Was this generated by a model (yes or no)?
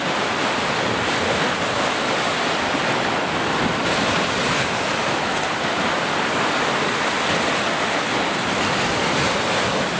no